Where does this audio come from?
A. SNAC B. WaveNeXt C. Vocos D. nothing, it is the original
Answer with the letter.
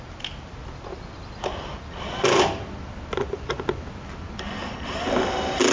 D